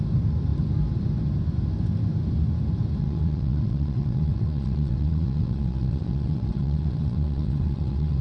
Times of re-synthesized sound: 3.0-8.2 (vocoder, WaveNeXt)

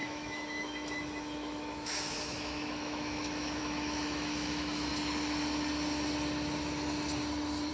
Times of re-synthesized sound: 0.0-4.9 (autoencoder, DAC-VAE)

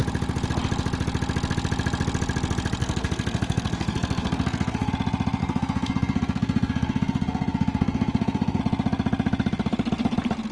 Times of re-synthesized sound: 2.8-4.9 (codec, SNAC); 5.4-8.6

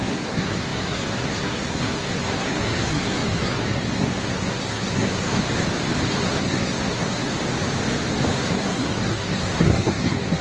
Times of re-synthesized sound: 0.0-5.4 (codec, SNAC); 6.1-7.3; 8.3-10.4

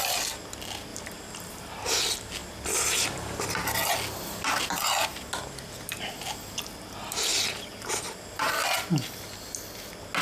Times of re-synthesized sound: 0.9-1.7 (vocoder, BigVGAN v2); 7.3-8.5